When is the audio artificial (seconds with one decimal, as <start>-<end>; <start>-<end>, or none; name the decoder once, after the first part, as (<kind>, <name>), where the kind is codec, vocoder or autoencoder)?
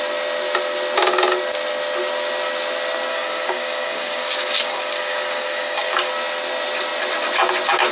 3.1-6.1 (codec, DAC)